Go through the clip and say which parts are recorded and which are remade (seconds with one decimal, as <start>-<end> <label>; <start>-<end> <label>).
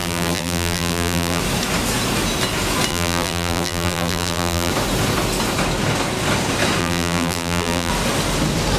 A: 0.0-1.4 remade; 1.4-2.9 recorded; 2.9-4.7 remade; 4.7-6.8 recorded; 6.8-7.9 remade; 7.9-8.8 recorded